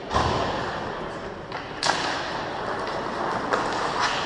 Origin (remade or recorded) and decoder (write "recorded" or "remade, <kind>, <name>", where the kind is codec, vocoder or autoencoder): recorded